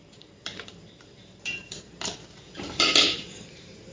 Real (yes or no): no